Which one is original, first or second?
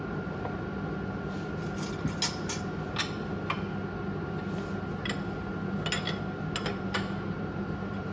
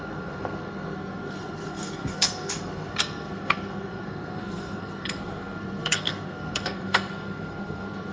first